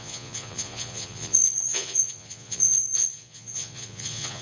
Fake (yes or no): yes